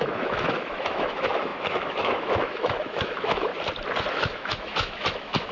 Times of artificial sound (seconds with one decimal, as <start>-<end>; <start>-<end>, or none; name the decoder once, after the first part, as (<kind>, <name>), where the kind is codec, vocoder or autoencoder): 0.0-3.5 (autoencoder, DAC-VAE); 4.1-5.5

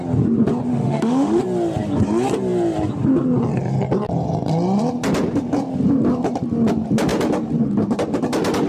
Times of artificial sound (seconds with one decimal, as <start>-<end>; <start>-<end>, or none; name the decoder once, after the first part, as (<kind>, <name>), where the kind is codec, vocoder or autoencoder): 0.7-1.4 (autoencoder, DAC-VAE)

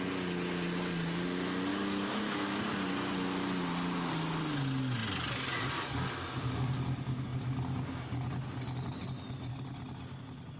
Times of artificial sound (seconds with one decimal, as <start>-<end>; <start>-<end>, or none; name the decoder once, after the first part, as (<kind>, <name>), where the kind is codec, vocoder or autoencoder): 1.7-2.6 (autoencoder, DAC-VAE)

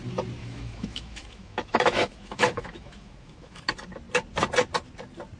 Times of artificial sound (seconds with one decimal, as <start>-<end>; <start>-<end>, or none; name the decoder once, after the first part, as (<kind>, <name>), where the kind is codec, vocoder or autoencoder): 0.4-3.6 (autoencoder, DAC-VAE)

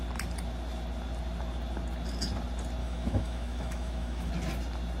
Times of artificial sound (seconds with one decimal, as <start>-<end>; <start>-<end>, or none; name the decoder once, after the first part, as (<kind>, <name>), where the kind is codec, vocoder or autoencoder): 2.8-4.3 (autoencoder, DAC-VAE)

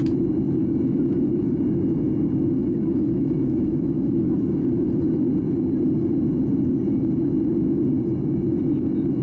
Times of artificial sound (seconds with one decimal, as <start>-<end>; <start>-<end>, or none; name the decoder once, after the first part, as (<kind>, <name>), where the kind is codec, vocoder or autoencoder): 2.6-5.0 (autoencoder, DAC-VAE)